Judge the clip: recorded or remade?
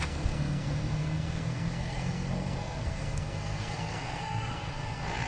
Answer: remade